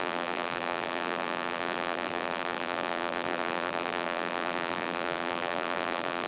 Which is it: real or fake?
fake